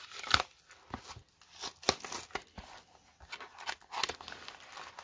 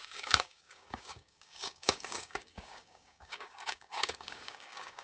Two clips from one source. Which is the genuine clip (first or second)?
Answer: first